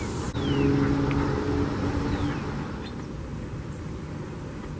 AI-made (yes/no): no